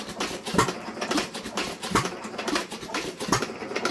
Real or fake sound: fake